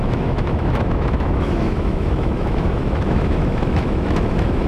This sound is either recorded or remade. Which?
remade